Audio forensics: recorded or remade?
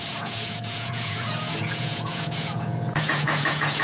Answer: remade